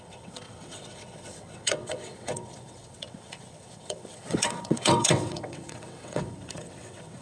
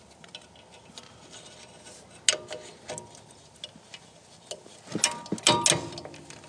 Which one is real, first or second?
second